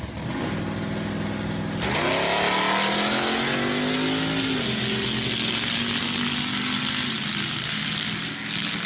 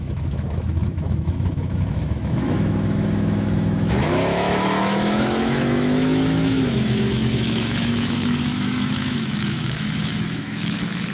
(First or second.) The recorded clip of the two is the first